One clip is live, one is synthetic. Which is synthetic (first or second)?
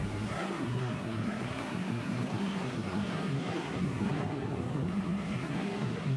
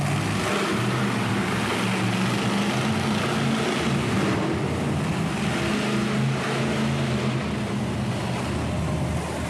first